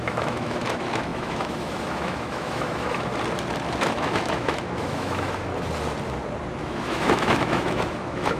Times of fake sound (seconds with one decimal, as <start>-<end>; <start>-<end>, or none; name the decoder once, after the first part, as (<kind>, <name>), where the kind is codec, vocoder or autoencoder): 0.0-3.1 (autoencoder, DAC-VAE); 3.8-5.5; 6.6-8.4